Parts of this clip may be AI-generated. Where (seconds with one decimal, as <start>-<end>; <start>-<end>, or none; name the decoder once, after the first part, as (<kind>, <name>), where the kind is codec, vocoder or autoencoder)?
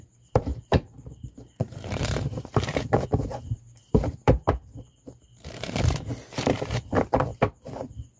0.0-7.3 (vocoder, BigVGAN v2)